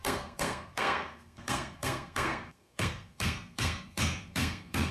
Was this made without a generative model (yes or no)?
no